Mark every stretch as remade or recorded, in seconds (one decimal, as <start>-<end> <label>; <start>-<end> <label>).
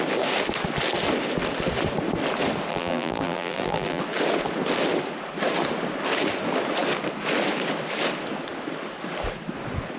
0.0-2.7 recorded; 2.7-4.0 remade; 4.0-10.0 recorded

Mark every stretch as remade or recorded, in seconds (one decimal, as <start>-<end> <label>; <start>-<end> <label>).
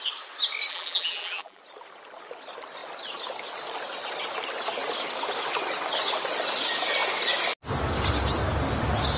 0.0-0.7 recorded; 0.7-1.6 remade; 1.6-9.2 recorded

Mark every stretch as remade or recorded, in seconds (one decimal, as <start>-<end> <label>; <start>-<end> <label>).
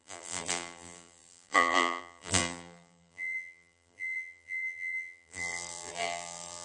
0.0-6.6 remade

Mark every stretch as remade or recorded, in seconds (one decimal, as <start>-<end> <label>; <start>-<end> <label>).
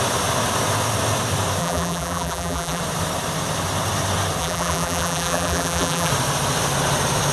0.0-1.6 recorded; 1.6-2.8 remade; 2.8-4.4 recorded; 4.4-6.1 remade; 6.1-7.3 recorded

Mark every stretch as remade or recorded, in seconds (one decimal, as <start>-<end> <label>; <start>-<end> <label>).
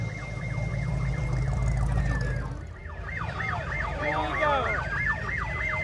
0.0-0.7 recorded; 0.7-2.0 remade; 2.0-2.8 recorded; 2.8-4.3 remade; 4.3-5.8 recorded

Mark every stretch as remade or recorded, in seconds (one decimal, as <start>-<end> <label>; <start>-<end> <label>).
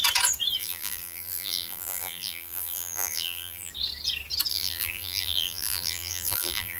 0.0-0.6 recorded; 0.6-3.7 remade; 3.7-4.5 recorded; 4.5-6.8 remade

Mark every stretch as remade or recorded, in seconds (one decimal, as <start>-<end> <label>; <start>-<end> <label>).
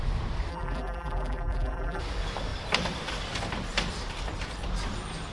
0.0-0.5 recorded; 0.5-2.0 remade; 2.0-5.3 recorded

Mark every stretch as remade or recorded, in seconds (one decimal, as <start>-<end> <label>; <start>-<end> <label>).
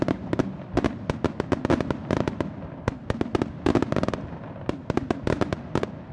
0.0-2.0 recorded; 2.0-2.6 remade; 2.6-6.1 recorded